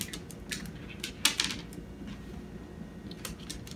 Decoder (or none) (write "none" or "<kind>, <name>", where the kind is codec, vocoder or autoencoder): none